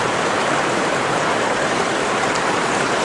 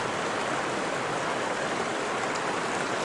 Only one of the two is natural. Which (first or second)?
second